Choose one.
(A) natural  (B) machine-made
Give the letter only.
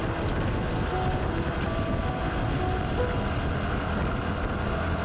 A